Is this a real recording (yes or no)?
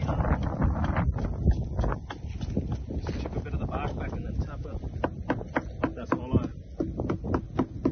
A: yes